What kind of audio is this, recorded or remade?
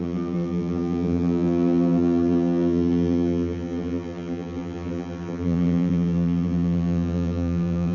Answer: remade